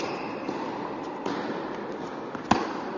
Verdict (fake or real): real